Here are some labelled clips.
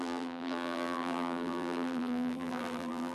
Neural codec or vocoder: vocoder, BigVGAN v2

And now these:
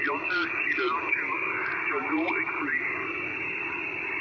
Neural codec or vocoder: none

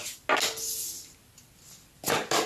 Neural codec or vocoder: none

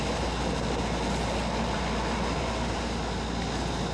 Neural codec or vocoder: none